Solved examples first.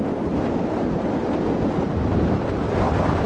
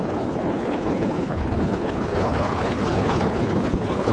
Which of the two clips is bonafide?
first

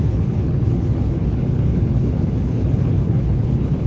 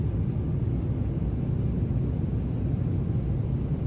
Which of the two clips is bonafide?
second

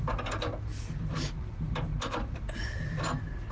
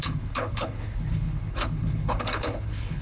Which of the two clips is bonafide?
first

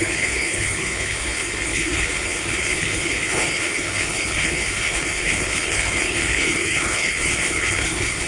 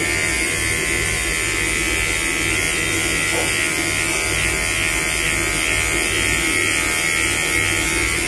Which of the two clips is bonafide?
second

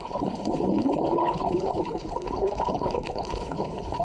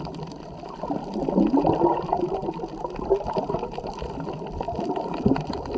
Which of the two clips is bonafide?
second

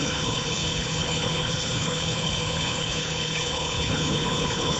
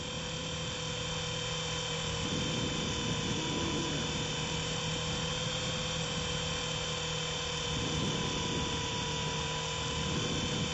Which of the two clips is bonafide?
second